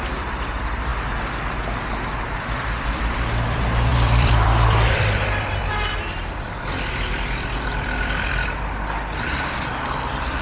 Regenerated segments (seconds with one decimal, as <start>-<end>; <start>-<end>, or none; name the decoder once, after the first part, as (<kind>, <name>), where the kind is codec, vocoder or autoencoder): 0.0-0.9 (vocoder, BigVGAN v2); 2.2-10.4